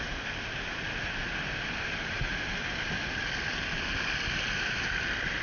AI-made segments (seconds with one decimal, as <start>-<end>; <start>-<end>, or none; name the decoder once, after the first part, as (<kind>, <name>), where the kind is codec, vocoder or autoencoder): none